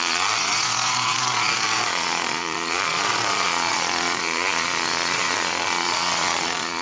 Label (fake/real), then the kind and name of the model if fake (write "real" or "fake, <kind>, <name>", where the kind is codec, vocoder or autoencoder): fake, vocoder, Vocos